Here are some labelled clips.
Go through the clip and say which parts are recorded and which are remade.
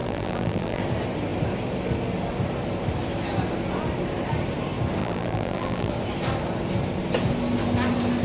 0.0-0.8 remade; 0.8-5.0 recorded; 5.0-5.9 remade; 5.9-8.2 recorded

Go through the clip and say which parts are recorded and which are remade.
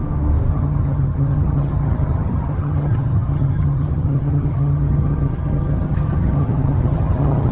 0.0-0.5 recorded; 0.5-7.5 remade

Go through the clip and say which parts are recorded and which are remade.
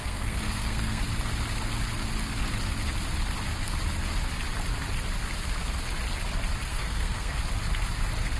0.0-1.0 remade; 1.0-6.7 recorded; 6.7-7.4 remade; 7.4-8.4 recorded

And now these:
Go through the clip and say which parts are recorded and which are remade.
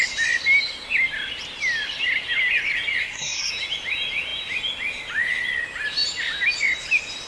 0.0-3.0 recorded; 3.0-3.5 remade; 3.5-7.3 recorded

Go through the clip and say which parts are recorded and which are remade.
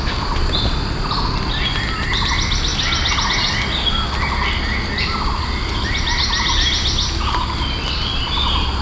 0.0-8.8 recorded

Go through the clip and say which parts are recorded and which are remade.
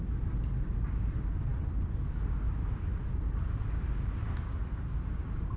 0.0-5.6 recorded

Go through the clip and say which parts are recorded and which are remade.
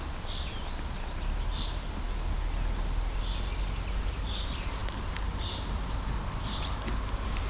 0.0-7.5 recorded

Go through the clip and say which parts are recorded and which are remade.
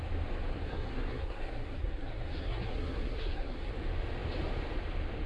0.0-0.5 recorded; 0.5-3.7 remade; 3.7-5.3 recorded